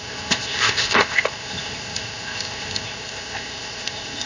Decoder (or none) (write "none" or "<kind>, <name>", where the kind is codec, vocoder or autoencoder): codec, ZipCodec